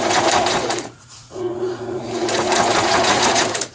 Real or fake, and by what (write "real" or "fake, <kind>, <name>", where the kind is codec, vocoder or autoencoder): fake, vocoder, Vocos